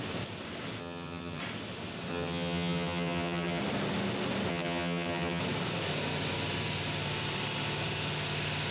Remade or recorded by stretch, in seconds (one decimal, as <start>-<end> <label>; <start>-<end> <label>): 0.0-0.8 recorded; 0.8-1.4 remade; 1.4-2.1 recorded; 2.1-3.6 remade; 3.6-4.5 recorded; 4.5-5.4 remade; 5.4-8.7 recorded